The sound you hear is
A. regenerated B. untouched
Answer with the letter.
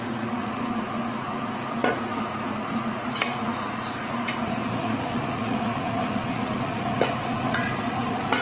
A